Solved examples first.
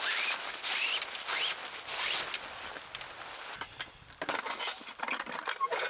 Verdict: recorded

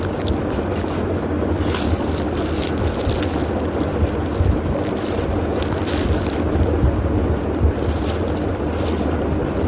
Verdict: recorded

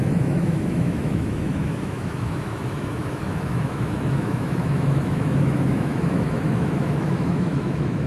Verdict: remade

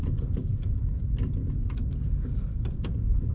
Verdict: recorded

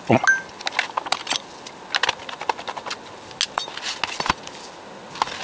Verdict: recorded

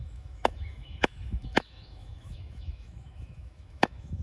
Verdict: remade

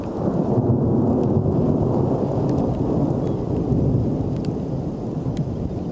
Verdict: recorded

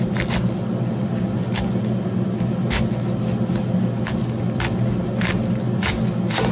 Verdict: recorded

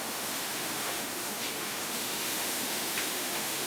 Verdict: remade